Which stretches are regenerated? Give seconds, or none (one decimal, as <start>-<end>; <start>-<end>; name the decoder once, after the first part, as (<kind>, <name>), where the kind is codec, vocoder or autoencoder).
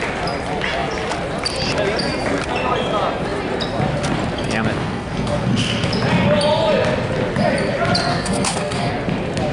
4.8-5.9 (codec, SNAC); 8.1-8.9